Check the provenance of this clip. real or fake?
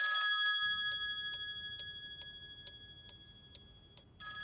real